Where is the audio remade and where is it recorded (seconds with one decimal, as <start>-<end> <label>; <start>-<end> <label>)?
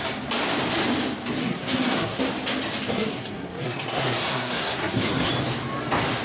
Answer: 0.0-1.4 recorded; 1.4-2.2 remade; 2.2-2.9 recorded; 2.9-5.3 remade; 5.3-6.2 recorded